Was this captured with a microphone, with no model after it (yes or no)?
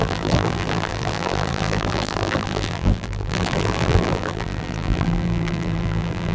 no